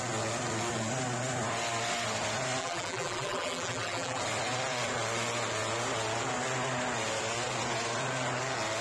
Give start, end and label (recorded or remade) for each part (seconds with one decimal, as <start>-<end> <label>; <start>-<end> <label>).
0.0-2.6 recorded; 2.6-4.2 remade; 4.2-8.8 recorded